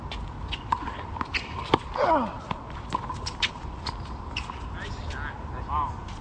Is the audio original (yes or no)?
yes